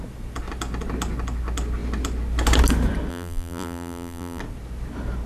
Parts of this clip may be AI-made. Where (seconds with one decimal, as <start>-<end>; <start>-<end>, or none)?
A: 3.1-4.4